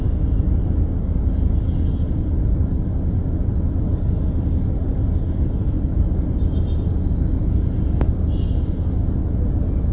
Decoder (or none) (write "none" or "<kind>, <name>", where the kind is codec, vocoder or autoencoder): none